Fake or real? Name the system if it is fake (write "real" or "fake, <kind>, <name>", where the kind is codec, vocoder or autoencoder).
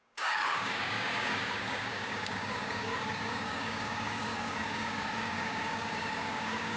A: fake, codec, DAC